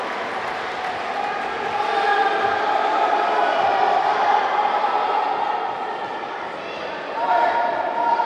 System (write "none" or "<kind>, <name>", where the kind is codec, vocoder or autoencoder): vocoder, BigVGAN v2